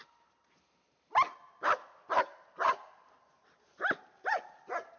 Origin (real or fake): real